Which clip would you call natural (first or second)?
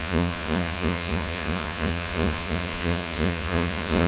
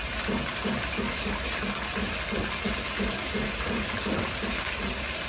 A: second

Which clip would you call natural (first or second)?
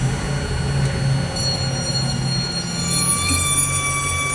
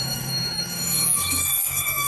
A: first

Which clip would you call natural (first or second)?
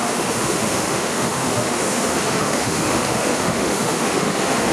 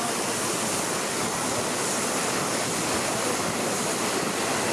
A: second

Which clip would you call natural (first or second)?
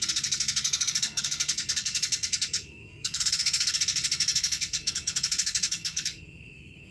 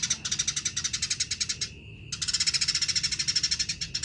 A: second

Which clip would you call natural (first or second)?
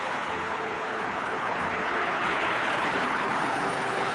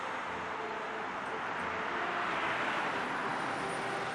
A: second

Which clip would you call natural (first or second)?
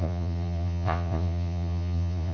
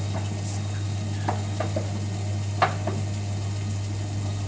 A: second